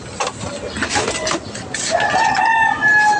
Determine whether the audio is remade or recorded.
recorded